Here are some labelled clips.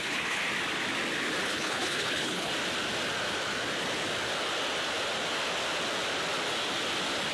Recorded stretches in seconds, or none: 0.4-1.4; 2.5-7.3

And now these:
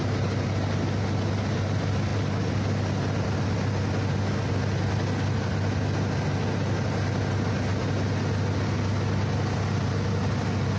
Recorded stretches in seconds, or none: 0.0-10.8

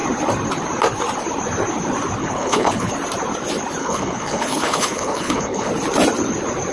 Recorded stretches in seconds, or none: 0.0-2.2; 2.9-3.8; 5.7-6.7

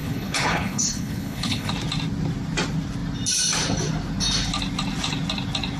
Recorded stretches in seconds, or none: 1.7-5.8

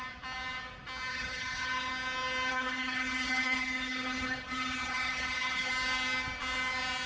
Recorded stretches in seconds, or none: 0.0-1.1; 1.9-2.5; 5.7-7.1